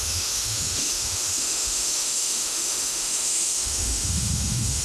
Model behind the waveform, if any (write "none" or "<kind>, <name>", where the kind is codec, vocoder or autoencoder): autoencoder, DAC-VAE